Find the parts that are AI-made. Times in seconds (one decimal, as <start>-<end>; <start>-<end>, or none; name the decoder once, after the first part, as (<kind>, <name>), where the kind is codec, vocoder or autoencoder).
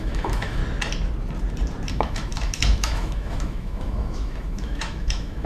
0.0-0.6 (autoencoder, DAC-VAE); 1.9-5.5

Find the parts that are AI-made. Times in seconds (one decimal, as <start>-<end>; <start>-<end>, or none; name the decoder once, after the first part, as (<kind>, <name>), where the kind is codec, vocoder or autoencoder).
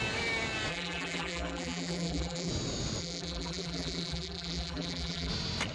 0.7-2.5 (vocoder, BigVGAN v2); 3.0-5.3